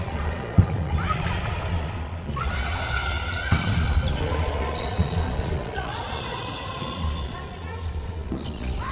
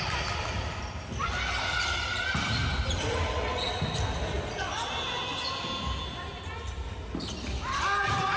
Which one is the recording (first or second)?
second